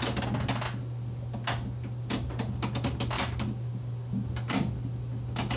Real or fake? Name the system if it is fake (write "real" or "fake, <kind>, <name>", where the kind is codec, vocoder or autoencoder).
real